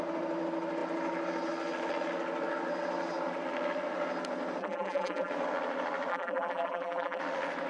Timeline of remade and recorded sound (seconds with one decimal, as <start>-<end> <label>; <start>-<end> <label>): 0.0-4.6 recorded; 4.6-5.3 remade; 5.3-6.1 recorded; 6.1-7.2 remade; 7.2-7.7 recorded